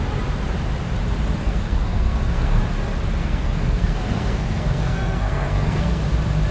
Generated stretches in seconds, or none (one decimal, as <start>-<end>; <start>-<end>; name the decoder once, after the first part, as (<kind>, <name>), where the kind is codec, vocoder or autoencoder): 1.4-2.6 (codec, SNAC); 3.2-6.0